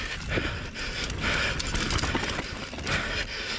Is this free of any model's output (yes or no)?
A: yes